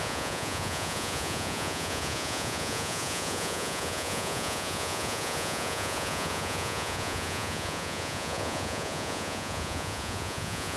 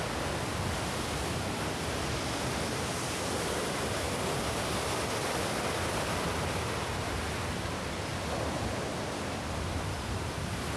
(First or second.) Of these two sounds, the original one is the second